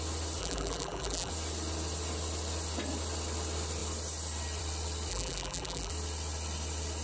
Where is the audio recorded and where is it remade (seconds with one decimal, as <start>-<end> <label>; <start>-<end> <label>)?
0.0-0.4 recorded; 0.4-1.3 remade; 1.3-5.1 recorded; 5.1-5.9 remade; 5.9-7.0 recorded